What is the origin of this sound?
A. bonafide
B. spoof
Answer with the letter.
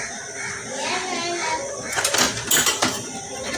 A